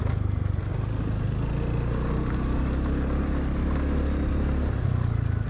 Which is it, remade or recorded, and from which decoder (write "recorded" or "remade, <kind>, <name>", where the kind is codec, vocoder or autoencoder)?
recorded